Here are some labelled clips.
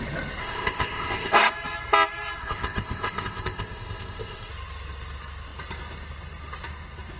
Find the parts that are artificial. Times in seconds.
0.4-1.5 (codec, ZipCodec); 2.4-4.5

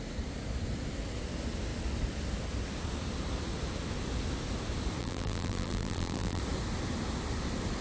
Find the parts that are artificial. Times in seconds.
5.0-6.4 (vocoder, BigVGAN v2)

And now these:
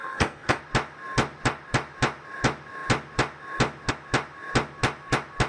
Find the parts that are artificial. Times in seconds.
0.0-0.6 (codec, SNAC)